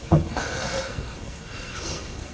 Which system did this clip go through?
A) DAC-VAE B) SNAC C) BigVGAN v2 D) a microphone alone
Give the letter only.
B